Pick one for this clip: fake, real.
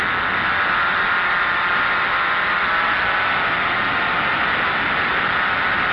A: real